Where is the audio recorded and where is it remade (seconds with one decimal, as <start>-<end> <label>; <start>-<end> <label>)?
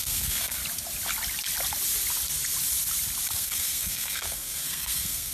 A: 0.0-0.6 remade; 0.6-3.3 recorded; 3.3-5.3 remade